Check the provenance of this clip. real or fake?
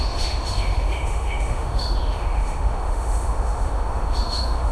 fake